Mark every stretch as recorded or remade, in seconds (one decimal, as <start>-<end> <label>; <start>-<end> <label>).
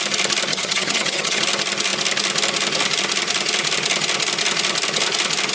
0.0-0.5 recorded; 0.5-1.4 remade; 1.4-5.5 recorded